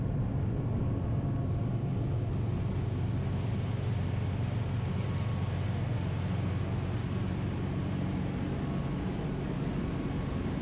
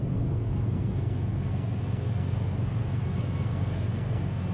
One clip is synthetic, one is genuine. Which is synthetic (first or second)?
second